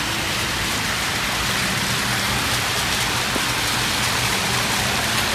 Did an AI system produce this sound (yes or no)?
no